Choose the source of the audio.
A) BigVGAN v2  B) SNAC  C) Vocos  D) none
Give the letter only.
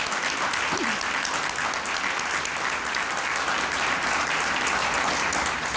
D